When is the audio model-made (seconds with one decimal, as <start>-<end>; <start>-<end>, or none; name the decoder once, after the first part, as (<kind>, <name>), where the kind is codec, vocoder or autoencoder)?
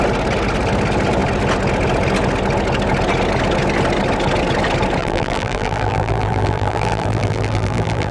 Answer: 5.0-8.1 (vocoder, BigVGAN v2)